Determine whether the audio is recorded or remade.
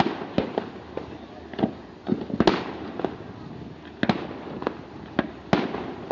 recorded